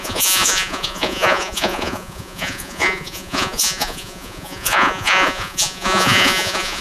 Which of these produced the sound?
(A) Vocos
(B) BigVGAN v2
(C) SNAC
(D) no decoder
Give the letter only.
A